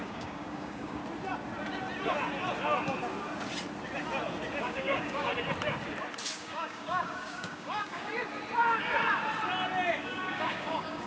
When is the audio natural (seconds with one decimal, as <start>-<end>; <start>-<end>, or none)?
1.0-4.6; 5.3-6.3; 8.1-10.0